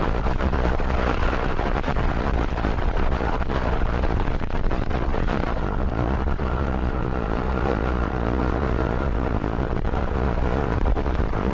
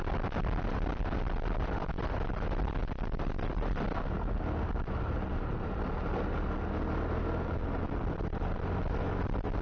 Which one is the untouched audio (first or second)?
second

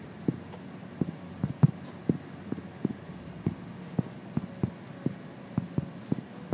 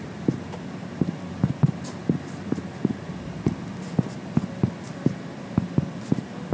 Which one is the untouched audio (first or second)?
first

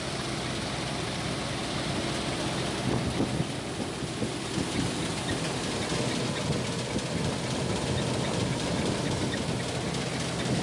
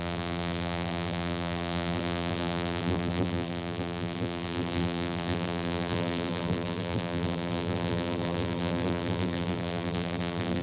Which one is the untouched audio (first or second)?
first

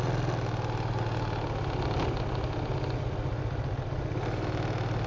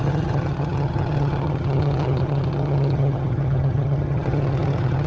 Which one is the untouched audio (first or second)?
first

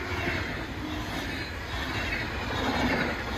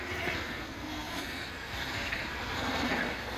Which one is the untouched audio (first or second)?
first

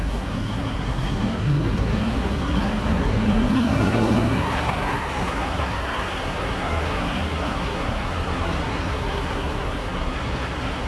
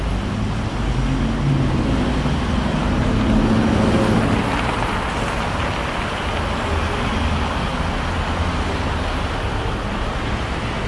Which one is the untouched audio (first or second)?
second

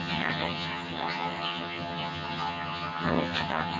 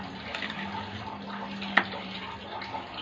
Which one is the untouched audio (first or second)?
second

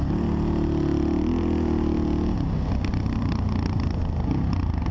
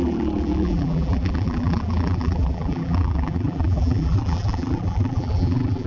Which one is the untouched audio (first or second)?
first